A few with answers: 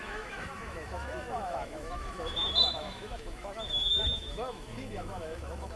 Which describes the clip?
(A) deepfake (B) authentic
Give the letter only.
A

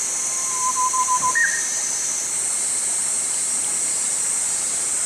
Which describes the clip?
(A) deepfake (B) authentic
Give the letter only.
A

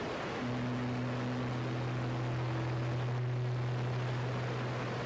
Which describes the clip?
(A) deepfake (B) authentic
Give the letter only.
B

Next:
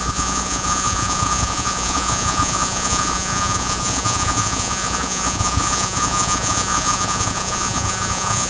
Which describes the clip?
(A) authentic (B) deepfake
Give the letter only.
B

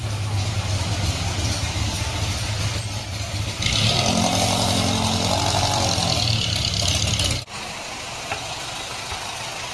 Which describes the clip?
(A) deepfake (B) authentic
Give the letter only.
B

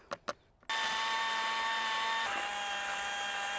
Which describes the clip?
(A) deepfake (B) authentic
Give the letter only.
B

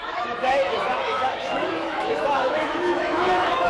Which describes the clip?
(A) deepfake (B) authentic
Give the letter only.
A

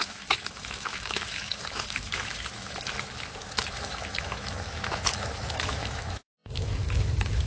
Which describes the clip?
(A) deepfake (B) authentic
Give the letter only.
A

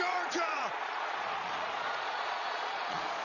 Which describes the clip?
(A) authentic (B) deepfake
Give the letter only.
B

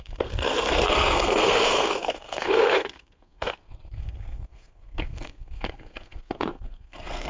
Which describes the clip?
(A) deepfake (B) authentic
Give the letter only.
A